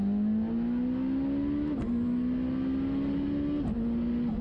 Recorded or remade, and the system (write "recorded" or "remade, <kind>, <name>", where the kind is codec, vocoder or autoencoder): recorded